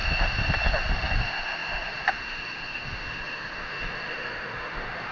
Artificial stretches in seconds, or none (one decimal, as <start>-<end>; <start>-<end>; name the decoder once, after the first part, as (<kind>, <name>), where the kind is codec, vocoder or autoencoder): 1.2-5.1 (autoencoder, DAC-VAE)